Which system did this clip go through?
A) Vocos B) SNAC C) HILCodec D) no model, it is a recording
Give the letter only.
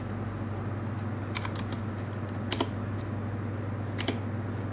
D